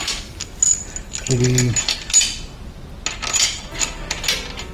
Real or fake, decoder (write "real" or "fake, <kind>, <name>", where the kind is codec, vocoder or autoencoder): real